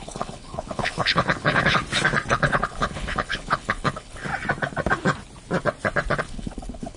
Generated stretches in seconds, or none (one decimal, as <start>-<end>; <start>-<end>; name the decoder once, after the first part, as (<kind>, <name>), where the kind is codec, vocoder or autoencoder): 0.0-1.8 (codec, HILCodec); 2.3-4.3; 6.2-7.0